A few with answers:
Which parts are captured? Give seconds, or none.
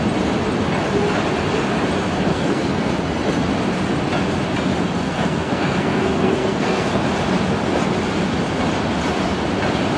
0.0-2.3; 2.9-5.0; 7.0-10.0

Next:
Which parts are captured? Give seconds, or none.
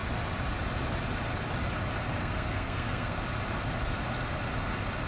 0.0-2.2; 3.2-5.1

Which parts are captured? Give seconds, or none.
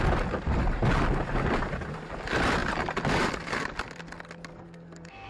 0.0-4.5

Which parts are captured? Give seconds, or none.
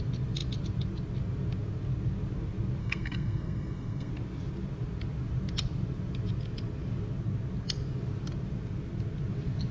0.0-2.8; 4.1-9.7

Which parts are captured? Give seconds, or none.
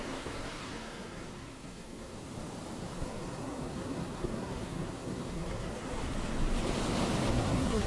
2.2-2.8; 6.0-7.3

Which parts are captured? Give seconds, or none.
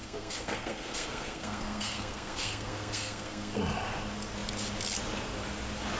3.6-6.0